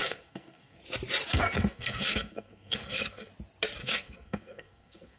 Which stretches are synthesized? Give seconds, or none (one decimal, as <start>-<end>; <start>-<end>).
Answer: 0.0-0.8; 1.3-3.3; 3.8-5.2